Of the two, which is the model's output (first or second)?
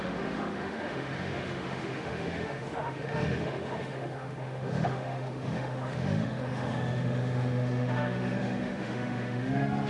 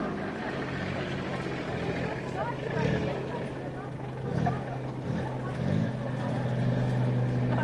first